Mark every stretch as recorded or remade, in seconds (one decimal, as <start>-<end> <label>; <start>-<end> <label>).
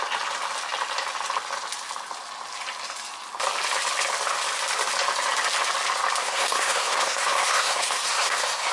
0.0-6.2 recorded; 6.2-8.7 remade